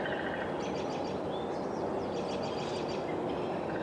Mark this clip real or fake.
real